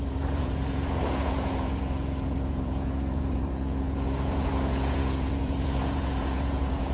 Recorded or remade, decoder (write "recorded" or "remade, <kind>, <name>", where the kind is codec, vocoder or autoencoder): remade, vocoder, Vocos